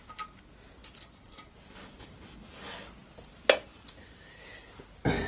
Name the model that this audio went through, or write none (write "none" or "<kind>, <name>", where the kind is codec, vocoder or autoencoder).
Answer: none